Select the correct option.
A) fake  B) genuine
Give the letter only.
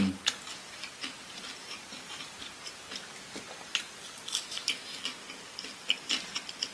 B